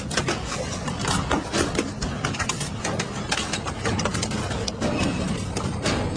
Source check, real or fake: real